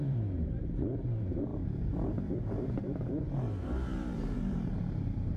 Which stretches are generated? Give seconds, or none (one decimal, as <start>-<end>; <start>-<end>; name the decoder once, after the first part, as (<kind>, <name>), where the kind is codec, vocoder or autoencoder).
0.0-5.4 (vocoder, BigVGAN v2)